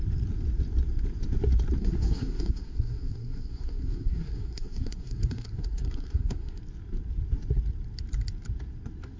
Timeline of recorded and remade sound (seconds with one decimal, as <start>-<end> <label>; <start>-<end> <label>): 0.0-1.8 recorded; 1.8-6.6 remade; 6.6-9.2 recorded